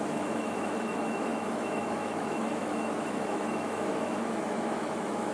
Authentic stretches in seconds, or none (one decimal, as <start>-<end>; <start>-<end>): none